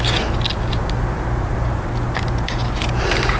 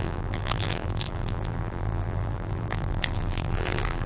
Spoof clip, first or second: second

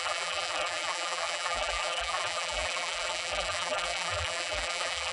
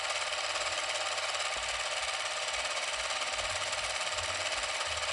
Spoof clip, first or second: first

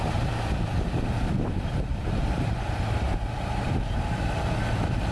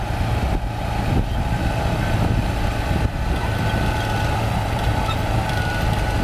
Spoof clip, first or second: first